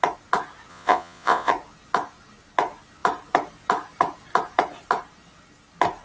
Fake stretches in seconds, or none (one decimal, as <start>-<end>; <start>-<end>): 0.7-1.5